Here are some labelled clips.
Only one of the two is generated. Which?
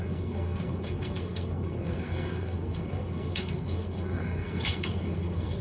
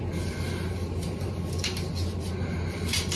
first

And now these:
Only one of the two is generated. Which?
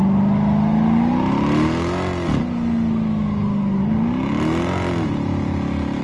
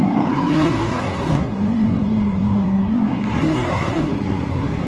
second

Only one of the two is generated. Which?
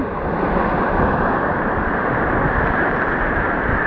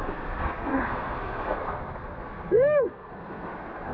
second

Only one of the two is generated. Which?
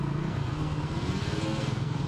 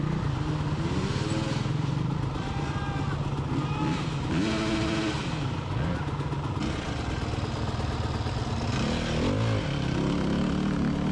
first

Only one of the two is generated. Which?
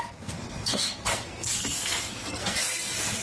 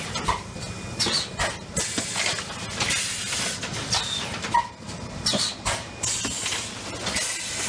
first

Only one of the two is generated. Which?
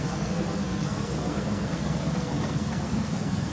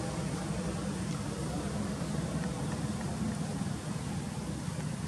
first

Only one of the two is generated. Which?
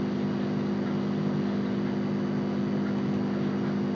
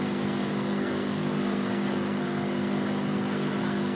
second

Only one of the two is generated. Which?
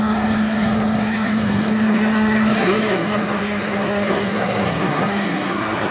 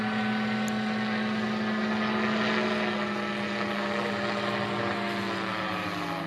first